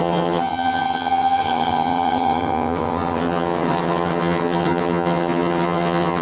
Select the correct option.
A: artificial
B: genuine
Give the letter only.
A